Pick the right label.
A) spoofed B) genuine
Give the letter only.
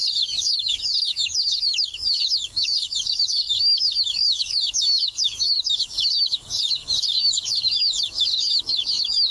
A